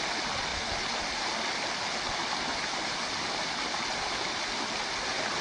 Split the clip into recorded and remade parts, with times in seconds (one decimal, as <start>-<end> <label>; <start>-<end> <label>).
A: 0.0-5.4 recorded